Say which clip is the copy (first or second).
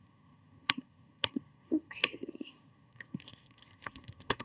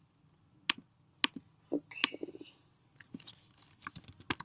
first